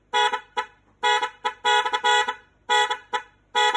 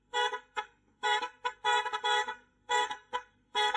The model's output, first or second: second